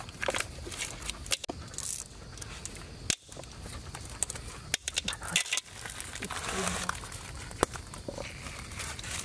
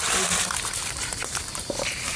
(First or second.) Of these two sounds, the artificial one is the second